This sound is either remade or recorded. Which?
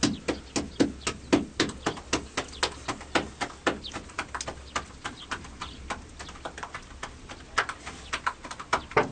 recorded